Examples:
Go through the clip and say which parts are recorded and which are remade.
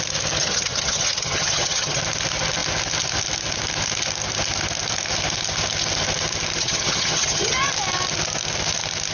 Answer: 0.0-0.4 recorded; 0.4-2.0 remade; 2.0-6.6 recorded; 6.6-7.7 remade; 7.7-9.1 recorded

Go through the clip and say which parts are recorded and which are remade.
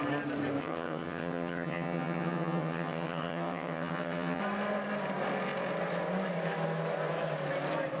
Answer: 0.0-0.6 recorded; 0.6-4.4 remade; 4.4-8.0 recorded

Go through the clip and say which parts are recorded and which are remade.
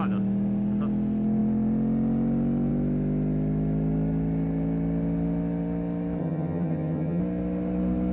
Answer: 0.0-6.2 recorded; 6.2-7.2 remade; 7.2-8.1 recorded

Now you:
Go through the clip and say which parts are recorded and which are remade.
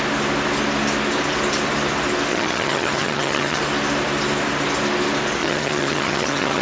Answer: 0.0-2.3 recorded; 2.3-3.6 remade; 3.6-5.4 recorded; 5.4-6.6 remade